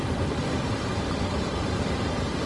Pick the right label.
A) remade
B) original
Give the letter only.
A